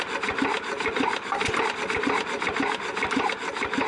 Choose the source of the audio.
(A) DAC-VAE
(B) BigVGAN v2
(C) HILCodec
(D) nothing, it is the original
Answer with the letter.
D